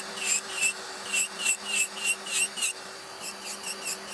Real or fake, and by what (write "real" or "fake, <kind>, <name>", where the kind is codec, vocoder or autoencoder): fake, vocoder, BigVGAN v2